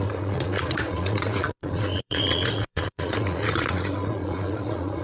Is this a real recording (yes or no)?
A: no